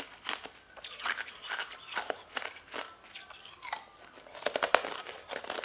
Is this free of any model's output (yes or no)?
yes